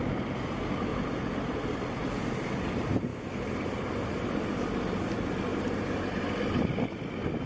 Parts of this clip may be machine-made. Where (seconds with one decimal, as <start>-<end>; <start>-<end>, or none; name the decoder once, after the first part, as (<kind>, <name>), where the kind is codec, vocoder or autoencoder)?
0.9-2.2 (vocoder, BigVGAN v2); 3.1-4.0; 5.5-6.9